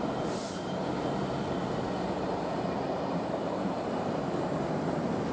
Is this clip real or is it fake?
fake